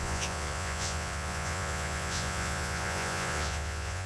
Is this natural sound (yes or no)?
no